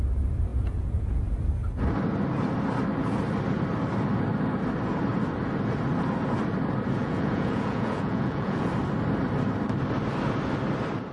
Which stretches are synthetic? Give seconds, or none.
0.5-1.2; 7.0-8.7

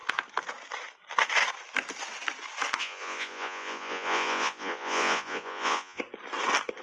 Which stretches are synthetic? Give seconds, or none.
2.8-6.0

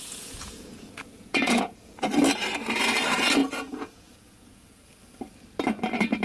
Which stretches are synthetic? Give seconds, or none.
0.0-2.1; 3.4-4.9

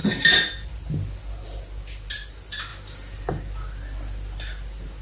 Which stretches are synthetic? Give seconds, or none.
none